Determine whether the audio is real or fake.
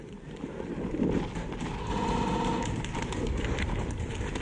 real